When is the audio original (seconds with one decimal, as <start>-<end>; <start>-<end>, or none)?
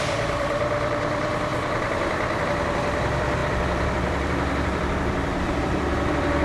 1.5-2.4